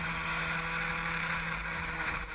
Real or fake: real